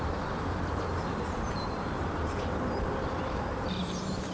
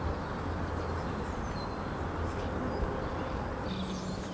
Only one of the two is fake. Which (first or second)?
first